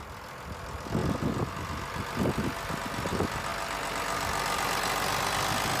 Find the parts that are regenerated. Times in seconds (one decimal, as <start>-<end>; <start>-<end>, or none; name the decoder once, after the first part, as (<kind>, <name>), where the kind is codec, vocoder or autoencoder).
none